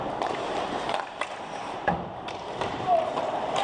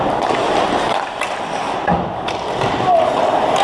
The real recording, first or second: second